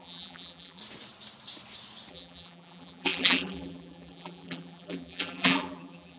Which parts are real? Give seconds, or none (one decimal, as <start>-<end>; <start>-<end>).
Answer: 0.8-2.1